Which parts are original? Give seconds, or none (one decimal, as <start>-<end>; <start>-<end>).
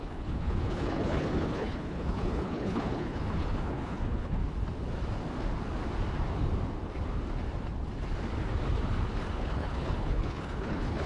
4.4-9.3